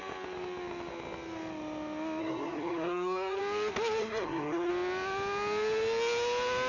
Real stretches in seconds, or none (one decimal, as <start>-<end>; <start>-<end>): 0.0-2.2; 3.4-4.0; 4.7-6.7